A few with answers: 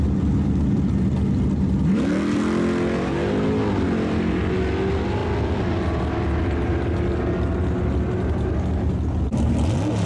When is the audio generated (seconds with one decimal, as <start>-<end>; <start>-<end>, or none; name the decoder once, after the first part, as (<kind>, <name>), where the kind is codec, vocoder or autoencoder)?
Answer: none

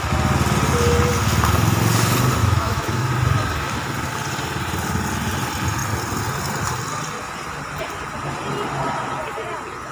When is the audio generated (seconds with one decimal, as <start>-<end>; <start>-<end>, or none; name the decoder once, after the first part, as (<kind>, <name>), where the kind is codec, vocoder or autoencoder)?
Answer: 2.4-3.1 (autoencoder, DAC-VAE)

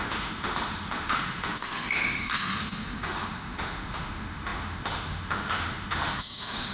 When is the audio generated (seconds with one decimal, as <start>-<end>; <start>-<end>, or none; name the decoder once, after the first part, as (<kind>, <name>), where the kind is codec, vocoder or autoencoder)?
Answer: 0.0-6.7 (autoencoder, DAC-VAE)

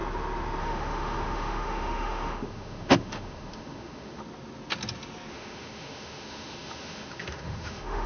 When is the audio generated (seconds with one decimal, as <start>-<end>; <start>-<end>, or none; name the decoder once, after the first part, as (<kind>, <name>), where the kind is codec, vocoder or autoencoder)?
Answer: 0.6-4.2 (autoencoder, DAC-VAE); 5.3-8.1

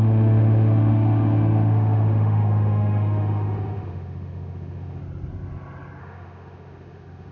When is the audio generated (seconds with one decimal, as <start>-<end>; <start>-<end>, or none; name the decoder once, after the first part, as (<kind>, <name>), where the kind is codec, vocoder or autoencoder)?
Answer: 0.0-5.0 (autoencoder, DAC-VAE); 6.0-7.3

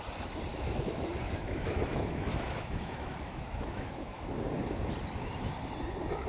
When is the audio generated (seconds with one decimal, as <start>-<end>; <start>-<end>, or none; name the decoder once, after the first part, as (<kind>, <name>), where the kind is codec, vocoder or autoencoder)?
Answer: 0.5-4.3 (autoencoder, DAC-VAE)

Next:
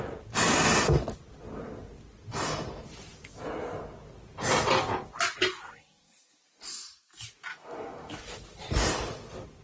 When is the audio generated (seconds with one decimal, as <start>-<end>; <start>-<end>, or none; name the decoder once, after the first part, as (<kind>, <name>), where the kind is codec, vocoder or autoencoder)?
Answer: 7.5-8.2 (autoencoder, DAC-VAE)